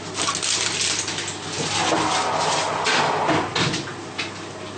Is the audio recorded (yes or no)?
yes